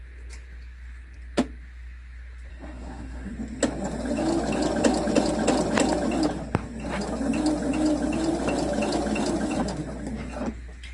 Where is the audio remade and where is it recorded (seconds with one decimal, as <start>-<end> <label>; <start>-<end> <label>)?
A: 0.0-2.5 recorded; 2.5-3.3 remade; 3.3-10.9 recorded